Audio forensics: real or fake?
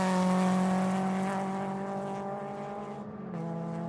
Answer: real